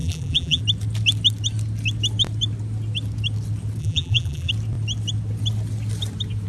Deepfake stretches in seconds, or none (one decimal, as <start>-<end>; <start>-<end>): 0.0-0.6; 3.8-4.5